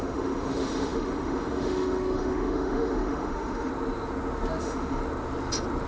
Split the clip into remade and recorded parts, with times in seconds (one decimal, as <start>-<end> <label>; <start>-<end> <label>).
0.0-3.7 remade; 3.7-4.6 recorded; 4.6-5.0 remade; 5.0-5.9 recorded